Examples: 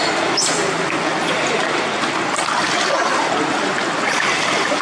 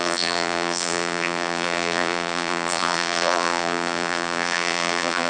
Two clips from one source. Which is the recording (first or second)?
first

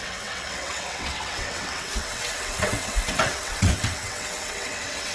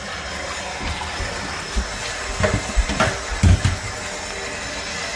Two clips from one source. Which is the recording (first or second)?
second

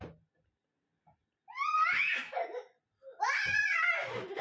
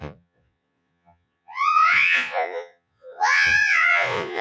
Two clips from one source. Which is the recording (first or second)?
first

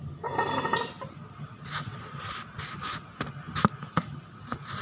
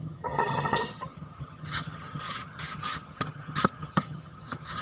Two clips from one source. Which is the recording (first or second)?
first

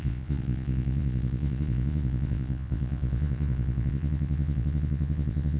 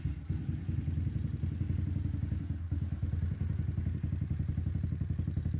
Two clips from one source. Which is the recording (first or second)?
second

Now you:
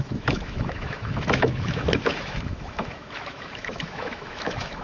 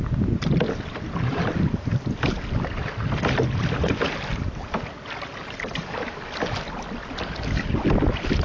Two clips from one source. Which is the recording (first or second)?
second